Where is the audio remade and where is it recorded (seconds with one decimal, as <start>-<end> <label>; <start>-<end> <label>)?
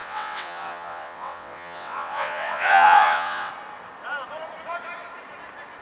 0.0-3.5 remade; 3.5-5.8 recorded